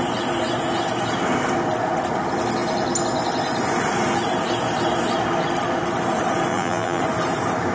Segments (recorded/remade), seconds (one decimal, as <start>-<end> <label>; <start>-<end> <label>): 0.0-6.5 recorded; 6.5-7.0 remade; 7.0-7.7 recorded